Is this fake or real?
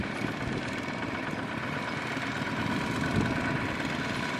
real